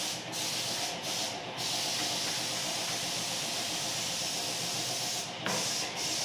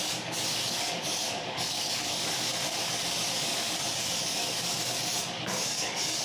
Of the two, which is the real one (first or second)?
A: first